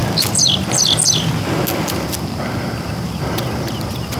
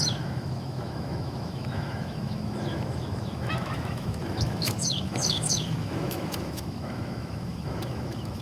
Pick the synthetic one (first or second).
second